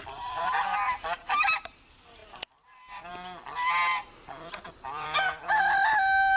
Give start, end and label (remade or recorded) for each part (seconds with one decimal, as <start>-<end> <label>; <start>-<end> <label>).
0.0-4.2 recorded; 4.2-5.6 remade; 5.6-6.4 recorded